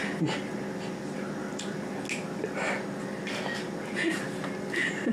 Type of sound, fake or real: real